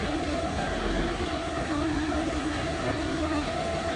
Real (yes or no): no